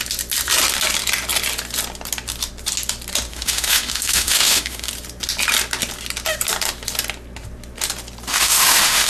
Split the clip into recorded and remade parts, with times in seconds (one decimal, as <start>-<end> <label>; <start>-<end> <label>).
0.0-3.3 recorded; 3.3-4.9 remade; 4.9-8.3 recorded; 8.3-9.1 remade